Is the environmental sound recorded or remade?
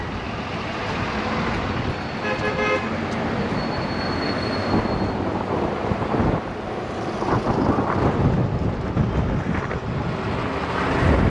recorded